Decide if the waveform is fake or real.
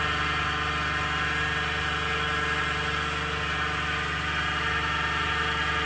real